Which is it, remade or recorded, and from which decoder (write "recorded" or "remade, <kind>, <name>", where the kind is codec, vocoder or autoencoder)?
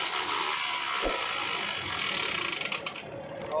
recorded